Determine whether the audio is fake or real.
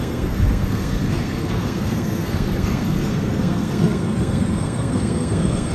fake